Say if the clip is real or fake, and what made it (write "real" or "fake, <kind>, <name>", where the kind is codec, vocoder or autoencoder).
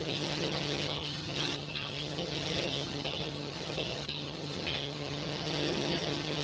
fake, vocoder, HiFi-GAN